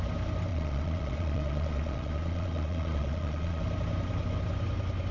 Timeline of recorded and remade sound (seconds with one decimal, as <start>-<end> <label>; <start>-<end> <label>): 0.0-0.5 recorded; 0.5-3.6 remade; 3.6-5.1 recorded